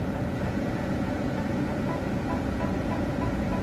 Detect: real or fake fake